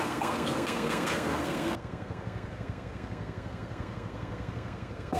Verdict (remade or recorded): remade